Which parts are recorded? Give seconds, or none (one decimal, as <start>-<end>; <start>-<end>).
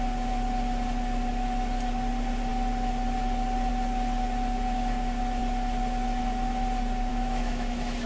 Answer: 0.0-7.1